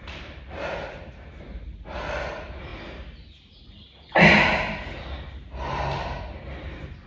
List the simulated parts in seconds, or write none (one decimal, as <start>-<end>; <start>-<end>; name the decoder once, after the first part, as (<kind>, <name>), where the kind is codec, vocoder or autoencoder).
0.0-2.7 (vocoder, BigVGAN v2)